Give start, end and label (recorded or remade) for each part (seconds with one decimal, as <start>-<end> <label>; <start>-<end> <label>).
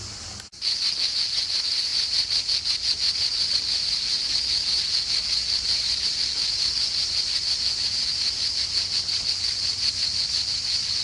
0.0-11.0 recorded